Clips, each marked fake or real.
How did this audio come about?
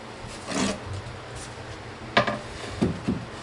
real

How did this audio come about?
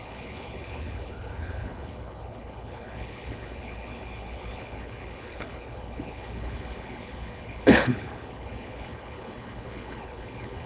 fake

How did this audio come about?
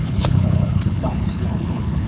fake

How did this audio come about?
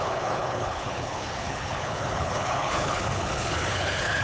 fake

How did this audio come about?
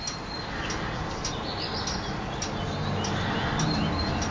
real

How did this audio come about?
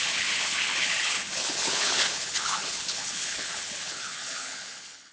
fake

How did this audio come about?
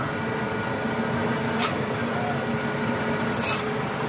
real